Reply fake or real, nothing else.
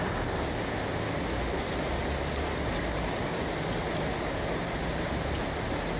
real